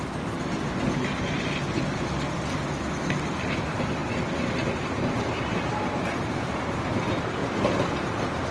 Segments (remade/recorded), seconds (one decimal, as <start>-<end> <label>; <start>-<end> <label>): 0.0-8.5 recorded